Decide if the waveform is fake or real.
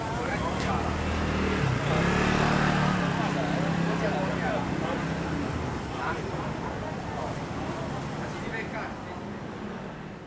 real